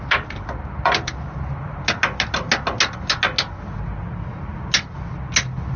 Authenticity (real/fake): real